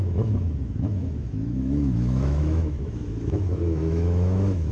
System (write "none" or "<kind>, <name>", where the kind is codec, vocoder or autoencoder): autoencoder, DAC-VAE